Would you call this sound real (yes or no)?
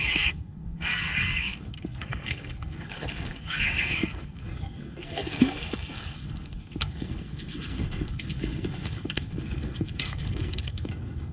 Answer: no